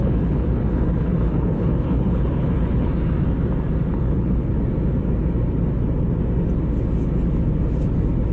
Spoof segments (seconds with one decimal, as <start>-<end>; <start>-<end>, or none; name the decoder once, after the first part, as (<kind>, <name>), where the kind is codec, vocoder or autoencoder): 0.0-2.9 (codec, HILCodec); 4.0-4.5